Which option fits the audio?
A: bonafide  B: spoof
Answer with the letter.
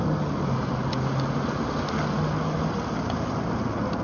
A